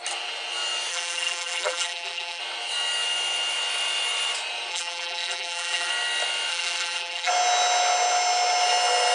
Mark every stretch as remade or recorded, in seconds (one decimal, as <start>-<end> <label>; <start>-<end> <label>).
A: 0.0-0.9 recorded; 0.9-2.4 remade; 2.4-4.7 recorded; 4.7-5.9 remade; 5.9-6.5 recorded; 6.5-7.3 remade; 7.3-9.1 recorded